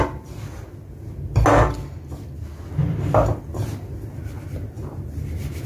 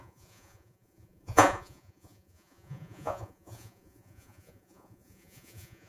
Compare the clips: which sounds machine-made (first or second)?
second